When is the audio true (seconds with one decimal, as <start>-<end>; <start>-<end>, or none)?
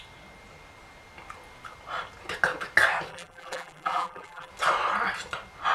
0.0-3.1; 4.5-5.7